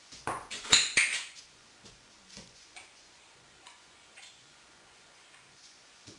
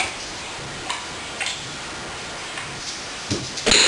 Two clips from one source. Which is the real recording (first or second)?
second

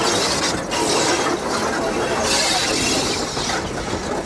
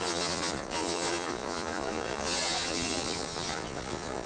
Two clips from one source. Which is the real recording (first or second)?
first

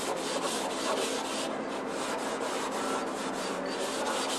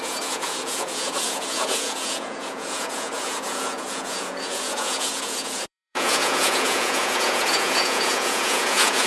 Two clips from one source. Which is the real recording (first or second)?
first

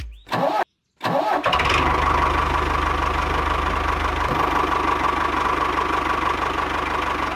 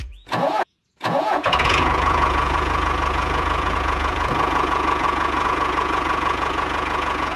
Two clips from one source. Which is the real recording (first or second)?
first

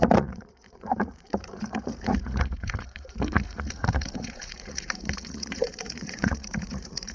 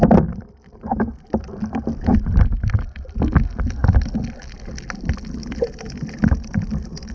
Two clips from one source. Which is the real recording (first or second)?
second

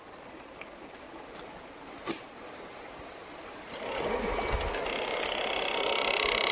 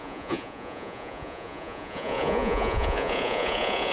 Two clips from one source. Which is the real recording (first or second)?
first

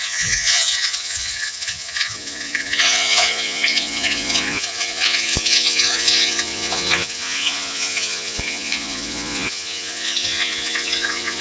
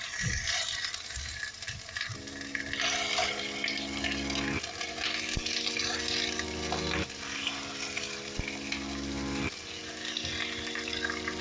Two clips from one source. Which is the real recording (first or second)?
second